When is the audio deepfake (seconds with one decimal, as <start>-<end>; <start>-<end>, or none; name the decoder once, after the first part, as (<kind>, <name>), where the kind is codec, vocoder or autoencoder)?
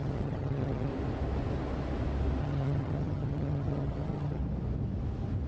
0.0-0.9 (vocoder, HiFi-GAN); 2.4-4.4